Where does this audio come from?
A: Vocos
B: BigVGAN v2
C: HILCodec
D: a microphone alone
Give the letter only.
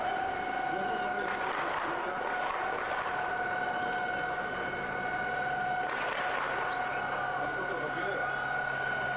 D